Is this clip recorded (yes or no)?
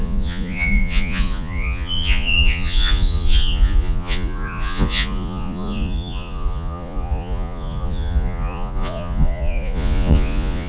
no